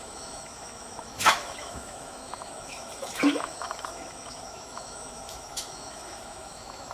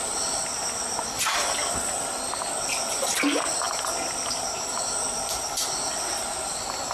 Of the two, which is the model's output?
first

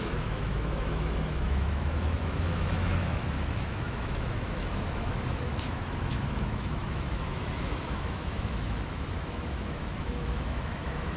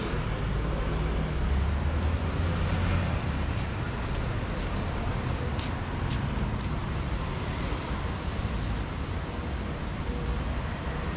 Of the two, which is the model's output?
first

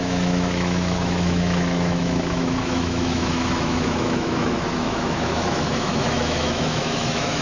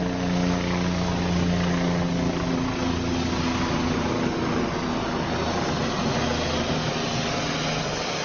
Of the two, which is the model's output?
first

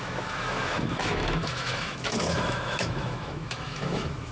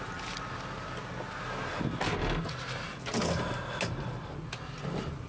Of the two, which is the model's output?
first